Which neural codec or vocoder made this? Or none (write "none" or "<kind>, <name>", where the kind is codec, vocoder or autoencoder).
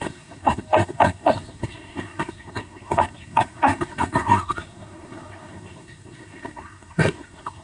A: codec, SNAC